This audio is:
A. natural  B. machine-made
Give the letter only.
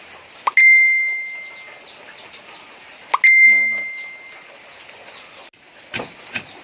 A